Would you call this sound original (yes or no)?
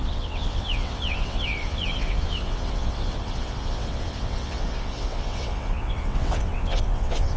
no